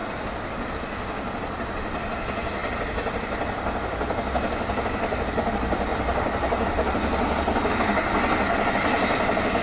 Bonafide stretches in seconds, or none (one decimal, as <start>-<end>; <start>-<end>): 0.0-9.6